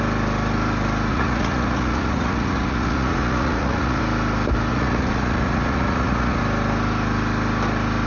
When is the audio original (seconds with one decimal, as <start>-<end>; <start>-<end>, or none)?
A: 0.0-1.1; 4.0-4.7; 6.4-8.1